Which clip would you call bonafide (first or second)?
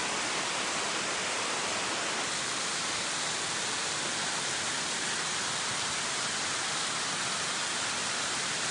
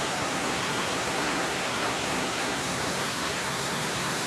first